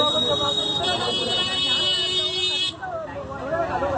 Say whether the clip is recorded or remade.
recorded